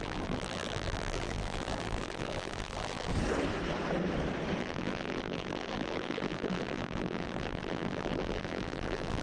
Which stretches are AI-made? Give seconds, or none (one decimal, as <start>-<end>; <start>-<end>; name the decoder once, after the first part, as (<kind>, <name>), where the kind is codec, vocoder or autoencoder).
0.0-3.1 (vocoder, BigVGAN v2); 4.6-9.2